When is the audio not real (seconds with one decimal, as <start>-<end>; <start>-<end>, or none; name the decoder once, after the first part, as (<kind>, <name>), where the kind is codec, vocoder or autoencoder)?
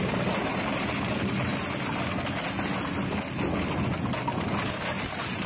none